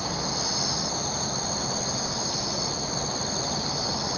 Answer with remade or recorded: recorded